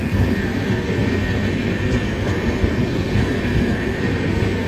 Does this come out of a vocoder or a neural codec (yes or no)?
yes